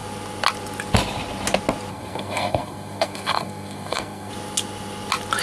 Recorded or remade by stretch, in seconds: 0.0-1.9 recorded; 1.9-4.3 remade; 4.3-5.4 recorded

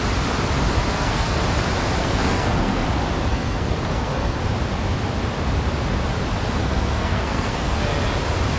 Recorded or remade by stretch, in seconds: 0.0-0.9 recorded; 0.9-1.4 remade; 1.4-2.0 recorded; 2.0-2.8 remade; 2.8-3.3 recorded; 3.3-4.4 remade; 4.4-6.6 recorded; 6.6-7.8 remade; 7.8-8.6 recorded

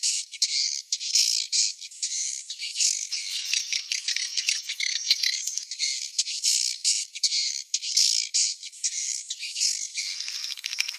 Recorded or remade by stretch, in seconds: 0.0-11.0 remade

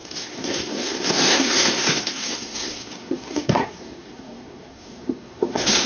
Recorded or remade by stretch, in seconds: 0.0-5.9 remade

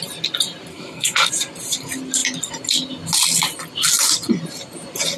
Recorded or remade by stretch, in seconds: 0.0-0.7 recorded; 0.7-1.3 remade; 1.3-5.2 recorded